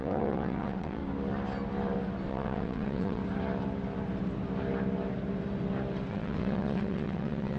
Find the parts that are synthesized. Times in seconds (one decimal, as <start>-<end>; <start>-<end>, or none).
0.0-1.0; 2.3-3.2; 6.1-7.6